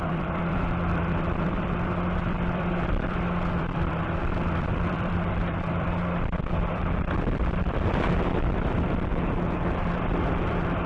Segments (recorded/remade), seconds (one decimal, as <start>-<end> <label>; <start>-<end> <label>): 0.0-9.1 remade; 9.1-10.0 recorded; 10.0-10.9 remade